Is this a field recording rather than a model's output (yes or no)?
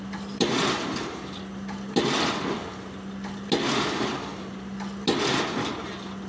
yes